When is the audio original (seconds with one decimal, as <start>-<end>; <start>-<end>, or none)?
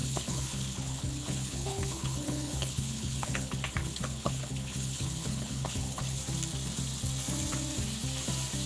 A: 6.2-8.7